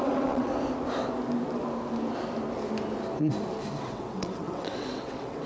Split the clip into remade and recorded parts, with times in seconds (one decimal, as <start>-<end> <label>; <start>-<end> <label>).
0.0-0.5 remade; 0.5-3.8 recorded; 3.8-5.5 remade